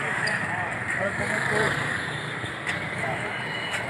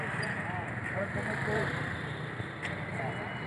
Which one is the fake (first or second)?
first